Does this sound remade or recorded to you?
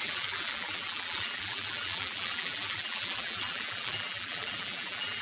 remade